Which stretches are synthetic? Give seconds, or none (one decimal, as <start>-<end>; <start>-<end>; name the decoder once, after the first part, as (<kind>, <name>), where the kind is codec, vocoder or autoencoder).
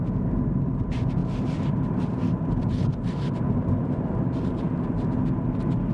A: 1.2-2.5 (vocoder, BigVGAN v2)